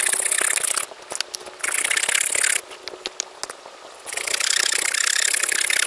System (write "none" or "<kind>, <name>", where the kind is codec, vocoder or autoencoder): none